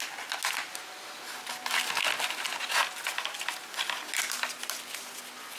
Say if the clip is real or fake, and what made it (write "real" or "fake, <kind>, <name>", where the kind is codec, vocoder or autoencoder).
real